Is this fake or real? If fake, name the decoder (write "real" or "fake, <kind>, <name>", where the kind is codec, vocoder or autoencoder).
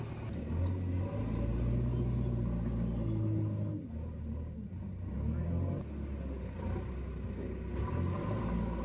real